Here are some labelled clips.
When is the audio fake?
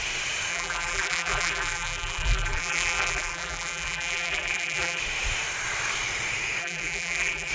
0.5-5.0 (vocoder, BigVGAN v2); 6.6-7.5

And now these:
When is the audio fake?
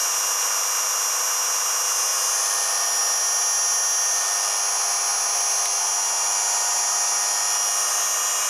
none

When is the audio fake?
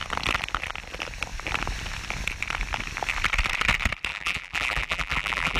4.1-5.6 (vocoder, BigVGAN v2)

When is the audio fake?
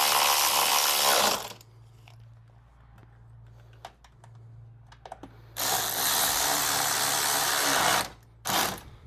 none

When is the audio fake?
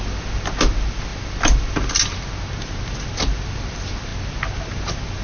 none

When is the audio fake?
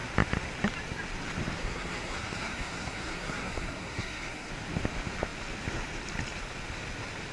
1.6-4.5 (codec, SNAC)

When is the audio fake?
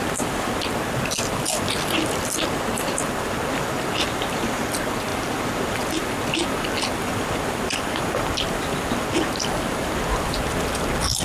none